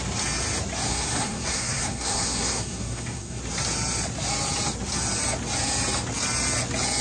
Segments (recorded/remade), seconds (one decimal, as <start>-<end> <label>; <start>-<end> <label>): 0.0-0.9 recorded; 0.9-3.4 remade; 3.4-7.0 recorded